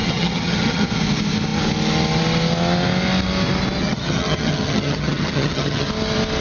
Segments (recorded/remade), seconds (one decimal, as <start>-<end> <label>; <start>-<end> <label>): 0.0-0.9 remade; 0.9-3.8 recorded; 3.8-5.9 remade; 5.9-6.4 recorded